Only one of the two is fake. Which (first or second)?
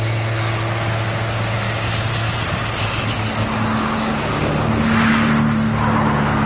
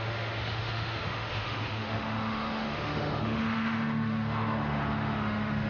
second